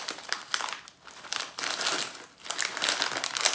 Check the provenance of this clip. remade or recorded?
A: recorded